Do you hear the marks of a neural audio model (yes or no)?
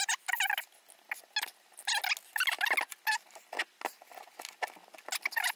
no